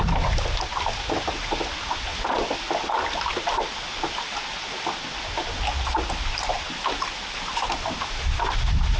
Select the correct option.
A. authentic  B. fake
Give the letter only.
A